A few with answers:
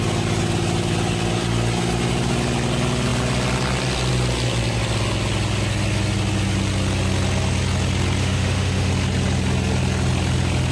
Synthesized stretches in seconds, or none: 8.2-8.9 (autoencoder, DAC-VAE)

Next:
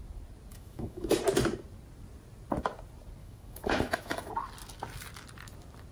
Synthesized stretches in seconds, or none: 0.5-1.2 (autoencoder, DAC-VAE); 3.2-4.3

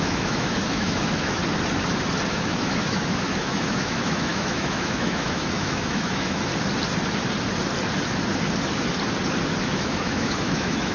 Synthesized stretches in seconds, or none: 0.0-1.4 (autoencoder, DAC-VAE); 2.3-6.5; 9.6-10.9